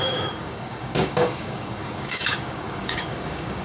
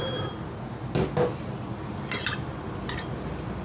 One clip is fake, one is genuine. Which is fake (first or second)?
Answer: first